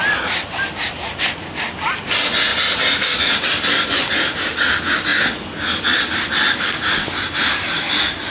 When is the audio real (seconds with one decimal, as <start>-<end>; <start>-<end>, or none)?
0.0-8.3